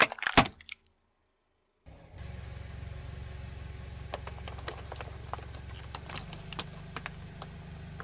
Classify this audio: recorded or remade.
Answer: recorded